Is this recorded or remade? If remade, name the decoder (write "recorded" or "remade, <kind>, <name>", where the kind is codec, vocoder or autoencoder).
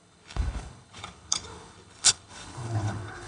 remade, codec, HILCodec